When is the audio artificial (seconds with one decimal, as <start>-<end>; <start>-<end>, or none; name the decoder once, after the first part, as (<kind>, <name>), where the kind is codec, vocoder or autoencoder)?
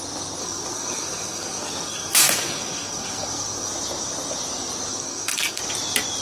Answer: 0.4-3.7 (codec, SNAC); 4.9-5.6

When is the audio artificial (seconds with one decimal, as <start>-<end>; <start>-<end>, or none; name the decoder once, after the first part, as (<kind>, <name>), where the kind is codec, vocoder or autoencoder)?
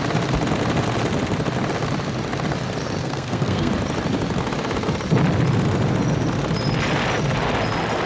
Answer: 3.0-3.7 (codec, SNAC)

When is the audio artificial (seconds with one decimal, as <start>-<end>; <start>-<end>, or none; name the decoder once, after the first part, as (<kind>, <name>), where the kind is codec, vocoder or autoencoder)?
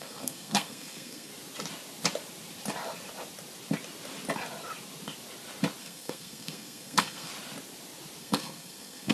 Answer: 0.0-1.3 (codec, SNAC); 5.8-7.3; 8.2-9.1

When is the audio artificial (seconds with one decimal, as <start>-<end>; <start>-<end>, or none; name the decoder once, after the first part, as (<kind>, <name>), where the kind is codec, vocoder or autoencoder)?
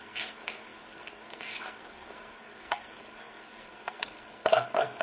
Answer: 0.0-5.0 (codec, SNAC)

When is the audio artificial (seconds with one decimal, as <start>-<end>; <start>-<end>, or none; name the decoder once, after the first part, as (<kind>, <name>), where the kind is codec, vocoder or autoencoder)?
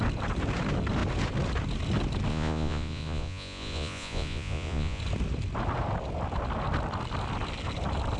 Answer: 2.3-5.0 (vocoder, Vocos)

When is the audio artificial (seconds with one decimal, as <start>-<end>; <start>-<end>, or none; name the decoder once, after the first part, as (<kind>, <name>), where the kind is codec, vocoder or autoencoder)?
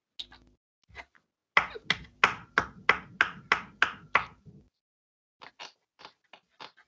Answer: none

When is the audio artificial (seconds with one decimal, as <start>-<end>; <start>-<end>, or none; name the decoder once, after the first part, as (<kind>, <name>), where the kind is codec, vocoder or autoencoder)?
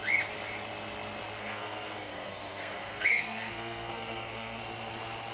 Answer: 1.4-4.6 (codec, SNAC)